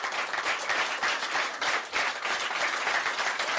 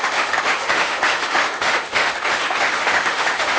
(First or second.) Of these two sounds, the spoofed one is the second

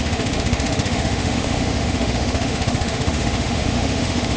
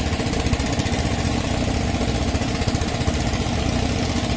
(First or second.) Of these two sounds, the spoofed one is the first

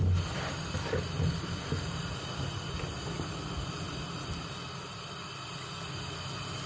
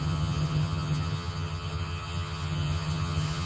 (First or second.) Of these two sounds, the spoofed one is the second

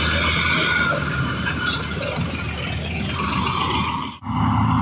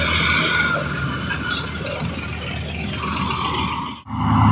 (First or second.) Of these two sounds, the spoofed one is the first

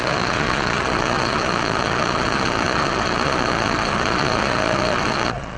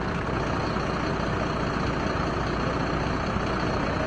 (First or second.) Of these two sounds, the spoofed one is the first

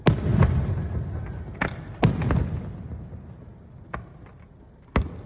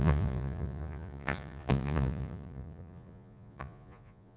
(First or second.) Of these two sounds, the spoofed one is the second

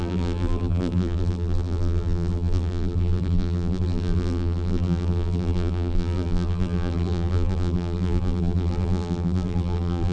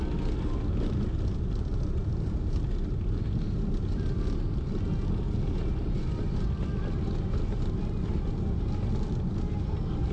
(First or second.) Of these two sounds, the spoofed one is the first